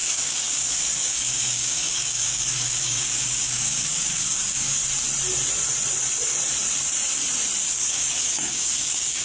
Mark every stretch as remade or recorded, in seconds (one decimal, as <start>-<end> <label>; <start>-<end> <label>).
0.0-4.8 remade; 4.8-7.6 recorded; 7.6-9.2 remade